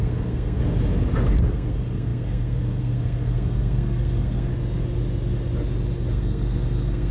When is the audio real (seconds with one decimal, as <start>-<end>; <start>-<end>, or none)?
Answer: 0.6-1.4; 4.5-6.1